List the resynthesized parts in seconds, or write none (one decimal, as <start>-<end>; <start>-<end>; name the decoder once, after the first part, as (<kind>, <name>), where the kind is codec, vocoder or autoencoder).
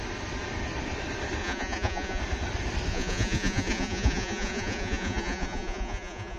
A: 1.4-2.2 (vocoder, Vocos); 2.9-6.4